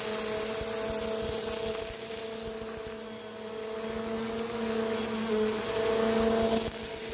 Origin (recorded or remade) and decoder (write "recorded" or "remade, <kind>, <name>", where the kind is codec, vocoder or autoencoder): recorded